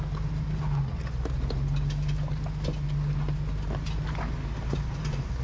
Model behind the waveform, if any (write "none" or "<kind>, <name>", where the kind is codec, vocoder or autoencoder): none